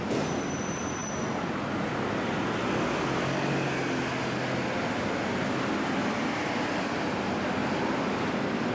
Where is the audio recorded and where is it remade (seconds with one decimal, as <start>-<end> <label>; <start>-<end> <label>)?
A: 0.0-8.7 recorded